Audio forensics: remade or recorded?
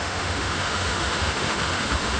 remade